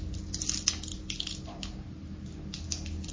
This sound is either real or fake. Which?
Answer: real